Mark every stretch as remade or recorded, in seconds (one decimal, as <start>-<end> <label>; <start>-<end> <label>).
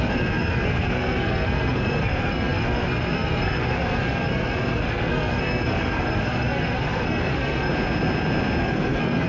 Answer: 0.0-7.7 remade; 7.7-8.6 recorded; 8.6-9.3 remade